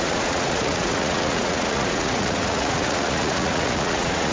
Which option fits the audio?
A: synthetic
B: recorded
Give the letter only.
A